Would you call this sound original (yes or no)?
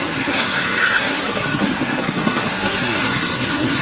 no